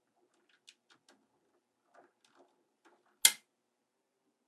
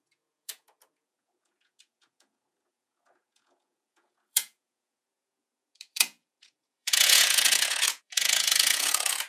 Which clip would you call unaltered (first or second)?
first